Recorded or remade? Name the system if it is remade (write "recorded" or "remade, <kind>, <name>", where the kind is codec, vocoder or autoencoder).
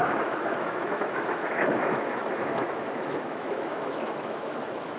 remade, autoencoder, DAC-VAE